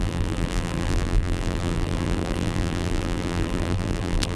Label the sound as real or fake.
fake